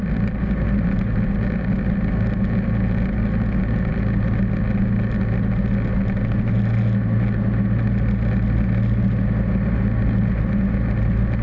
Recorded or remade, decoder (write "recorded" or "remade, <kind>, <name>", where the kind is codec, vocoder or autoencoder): recorded